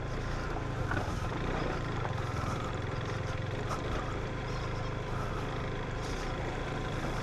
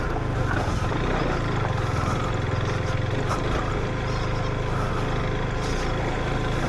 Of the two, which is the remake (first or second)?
first